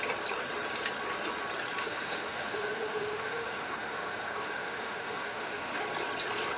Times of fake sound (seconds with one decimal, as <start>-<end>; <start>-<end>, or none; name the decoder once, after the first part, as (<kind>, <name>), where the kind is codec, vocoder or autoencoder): 1.8-5.8 (autoencoder, DAC-VAE)